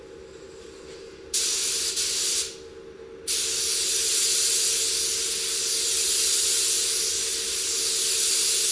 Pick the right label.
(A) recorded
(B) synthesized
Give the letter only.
A